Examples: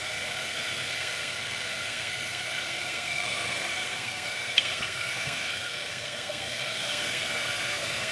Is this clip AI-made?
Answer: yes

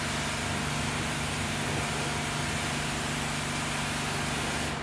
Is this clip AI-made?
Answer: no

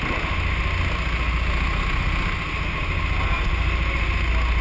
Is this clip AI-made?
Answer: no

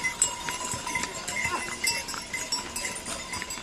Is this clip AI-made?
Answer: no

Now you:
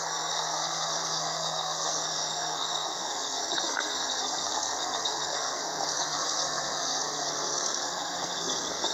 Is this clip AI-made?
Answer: yes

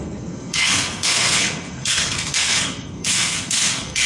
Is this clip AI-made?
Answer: yes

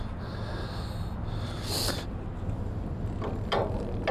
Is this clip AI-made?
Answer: no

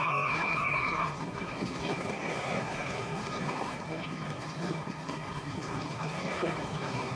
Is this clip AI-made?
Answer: yes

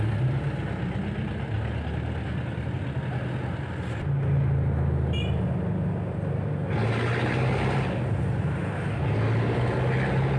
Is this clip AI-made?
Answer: no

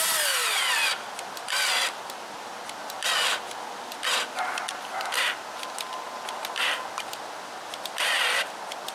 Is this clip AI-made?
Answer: no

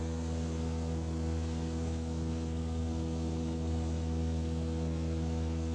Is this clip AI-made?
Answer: yes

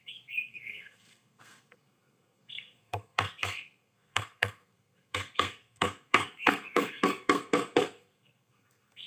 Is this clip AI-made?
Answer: yes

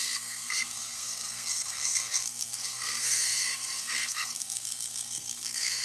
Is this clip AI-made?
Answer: yes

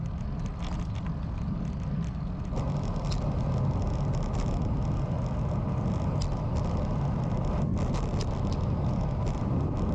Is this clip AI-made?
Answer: no